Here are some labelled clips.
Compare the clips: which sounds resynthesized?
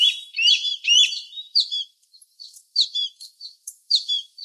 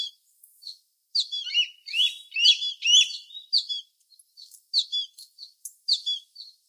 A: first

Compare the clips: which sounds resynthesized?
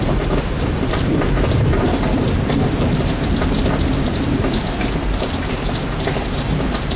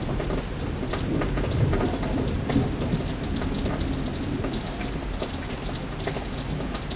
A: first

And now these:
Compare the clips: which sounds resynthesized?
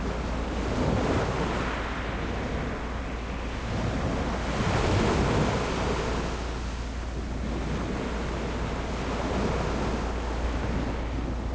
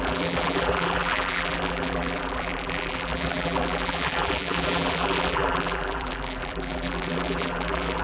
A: second